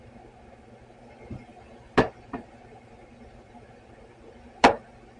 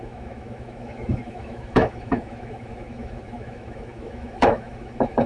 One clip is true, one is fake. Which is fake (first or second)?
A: second